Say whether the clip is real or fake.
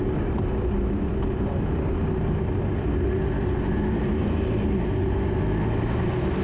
real